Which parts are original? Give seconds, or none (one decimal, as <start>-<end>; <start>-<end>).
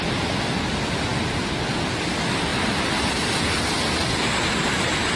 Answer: 0.0-5.2